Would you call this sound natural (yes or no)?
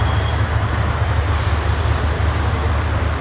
yes